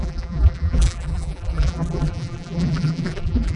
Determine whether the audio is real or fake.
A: fake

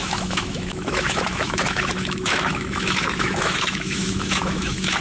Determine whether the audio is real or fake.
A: fake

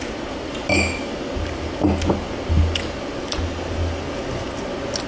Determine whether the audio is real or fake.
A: real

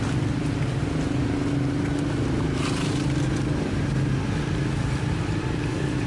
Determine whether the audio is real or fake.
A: real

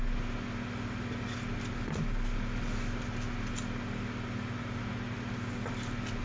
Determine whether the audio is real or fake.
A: real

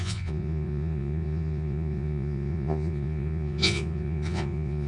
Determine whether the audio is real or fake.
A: fake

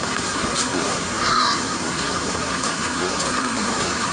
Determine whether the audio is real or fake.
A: fake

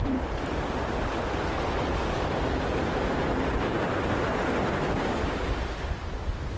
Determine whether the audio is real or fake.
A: real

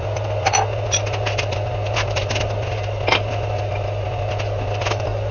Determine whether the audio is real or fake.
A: real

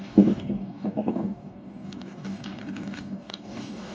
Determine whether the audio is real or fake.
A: fake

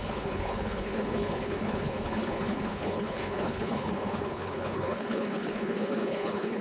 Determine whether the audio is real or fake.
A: fake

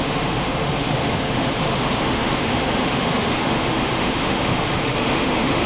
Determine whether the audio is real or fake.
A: fake